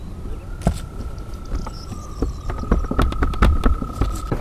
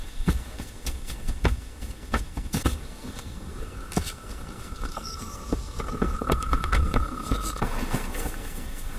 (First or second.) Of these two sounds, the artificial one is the second